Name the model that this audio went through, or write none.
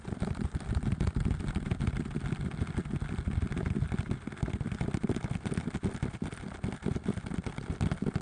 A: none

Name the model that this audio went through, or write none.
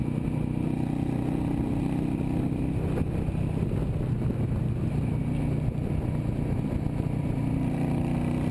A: none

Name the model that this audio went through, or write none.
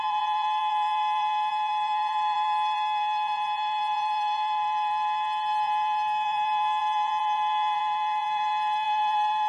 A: vocoder, BigVGAN v2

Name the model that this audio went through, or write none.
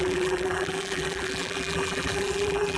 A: vocoder, BigVGAN v2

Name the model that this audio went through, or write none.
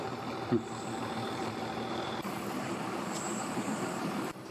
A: vocoder, BigVGAN v2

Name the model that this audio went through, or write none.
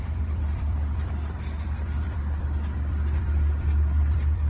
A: vocoder, BigVGAN v2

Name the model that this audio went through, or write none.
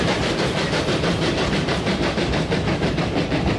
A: vocoder, BigVGAN v2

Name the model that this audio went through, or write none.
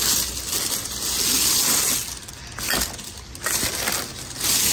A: none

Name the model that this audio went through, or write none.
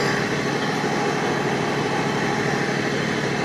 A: none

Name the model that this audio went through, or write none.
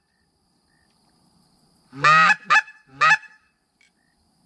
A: none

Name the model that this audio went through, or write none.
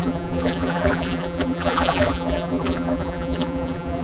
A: vocoder, BigVGAN v2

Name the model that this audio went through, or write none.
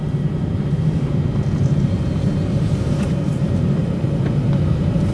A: vocoder, BigVGAN v2